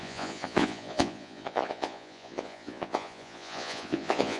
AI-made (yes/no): yes